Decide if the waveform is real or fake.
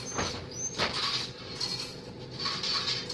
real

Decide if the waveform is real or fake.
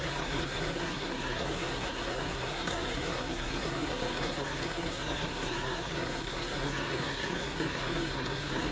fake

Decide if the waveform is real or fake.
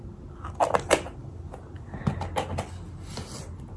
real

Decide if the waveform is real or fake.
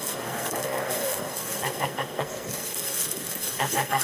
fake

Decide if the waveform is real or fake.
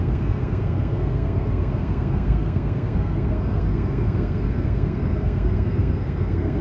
fake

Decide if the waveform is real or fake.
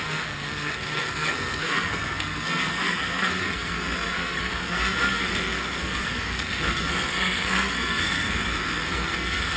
fake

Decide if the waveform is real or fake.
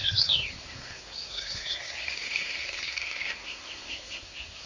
fake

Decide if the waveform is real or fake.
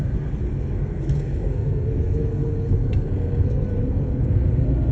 fake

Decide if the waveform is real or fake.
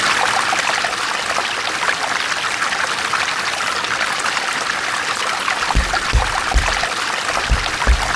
real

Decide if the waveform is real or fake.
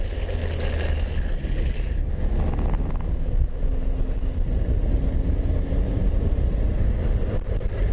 real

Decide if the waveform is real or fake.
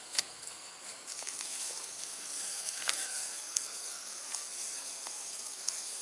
fake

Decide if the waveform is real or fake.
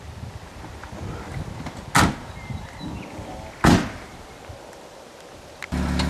real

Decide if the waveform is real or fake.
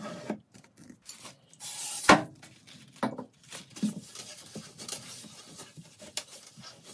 real